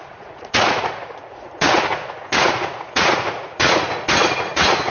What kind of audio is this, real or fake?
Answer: fake